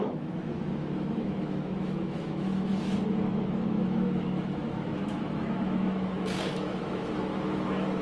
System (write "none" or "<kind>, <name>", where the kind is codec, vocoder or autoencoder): autoencoder, DAC-VAE